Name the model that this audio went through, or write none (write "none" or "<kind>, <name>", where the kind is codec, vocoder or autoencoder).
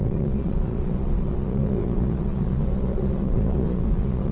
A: vocoder, Vocos